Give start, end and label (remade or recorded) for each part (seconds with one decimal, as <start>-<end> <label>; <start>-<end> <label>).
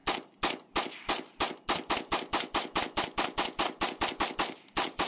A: 0.0-5.1 recorded